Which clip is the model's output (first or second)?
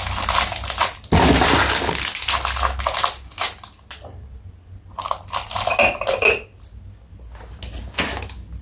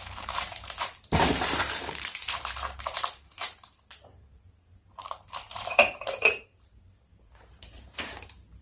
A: second